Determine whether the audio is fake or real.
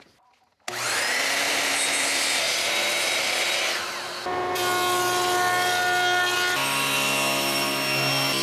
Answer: real